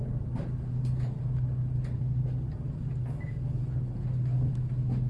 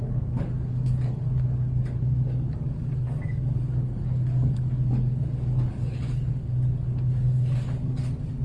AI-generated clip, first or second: second